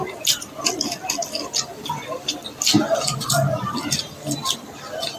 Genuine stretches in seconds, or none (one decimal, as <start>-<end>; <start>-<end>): none

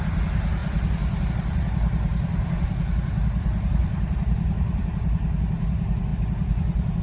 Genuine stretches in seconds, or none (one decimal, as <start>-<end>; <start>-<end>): 0.0-2.1; 4.9-6.1

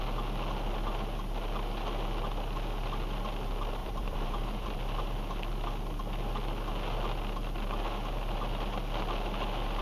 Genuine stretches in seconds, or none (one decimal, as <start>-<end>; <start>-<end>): 0.0-3.8; 4.8-9.8

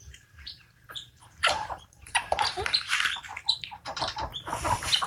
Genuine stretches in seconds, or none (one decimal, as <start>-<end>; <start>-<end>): 4.3-5.1

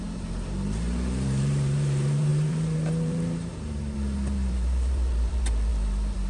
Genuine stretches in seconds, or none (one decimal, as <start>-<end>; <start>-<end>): none

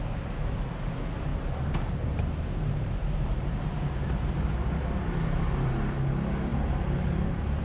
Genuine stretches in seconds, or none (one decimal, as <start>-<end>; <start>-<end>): 0.0-1.3; 5.8-6.5

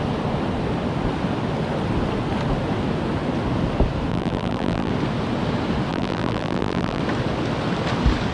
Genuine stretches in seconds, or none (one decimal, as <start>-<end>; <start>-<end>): 0.0-4.1; 4.9-5.9; 7.0-8.3